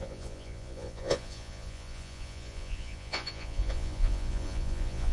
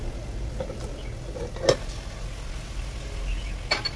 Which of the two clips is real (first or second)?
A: second